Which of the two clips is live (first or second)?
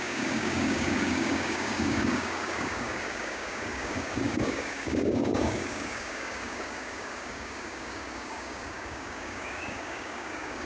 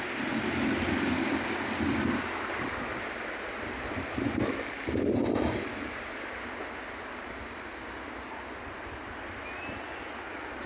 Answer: second